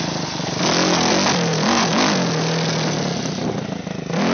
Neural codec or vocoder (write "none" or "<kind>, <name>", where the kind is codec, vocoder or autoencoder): none